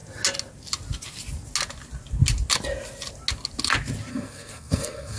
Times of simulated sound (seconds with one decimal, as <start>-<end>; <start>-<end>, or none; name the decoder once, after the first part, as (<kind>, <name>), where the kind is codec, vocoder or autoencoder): 4.1-5.2 (codec, SNAC)